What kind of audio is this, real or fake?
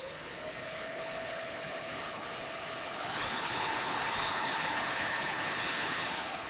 fake